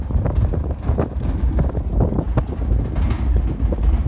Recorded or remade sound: recorded